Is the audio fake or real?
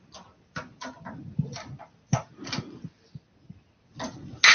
real